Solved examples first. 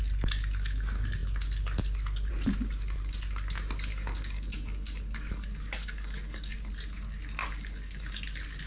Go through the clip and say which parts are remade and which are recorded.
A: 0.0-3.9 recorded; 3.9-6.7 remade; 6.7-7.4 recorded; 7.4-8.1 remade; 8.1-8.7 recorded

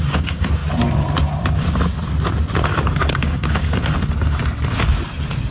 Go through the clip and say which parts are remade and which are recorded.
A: 0.0-0.6 remade; 0.6-3.1 recorded; 3.1-3.6 remade; 3.6-5.5 recorded

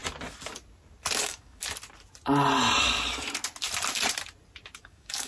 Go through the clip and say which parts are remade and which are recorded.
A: 0.0-1.2 recorded; 1.2-1.6 remade; 1.6-4.8 recorded; 4.8-5.3 remade

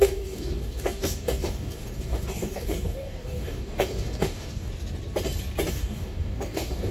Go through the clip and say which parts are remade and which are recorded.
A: 0.0-4.7 remade; 4.7-5.7 recorded; 5.7-6.9 remade